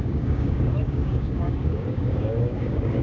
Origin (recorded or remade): remade